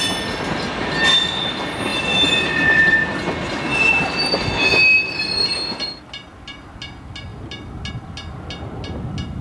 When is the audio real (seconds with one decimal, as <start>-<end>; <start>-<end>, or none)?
0.0-9.4